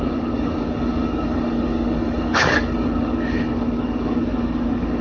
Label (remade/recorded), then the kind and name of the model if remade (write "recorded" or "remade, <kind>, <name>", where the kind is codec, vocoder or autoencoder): remade, codec, DAC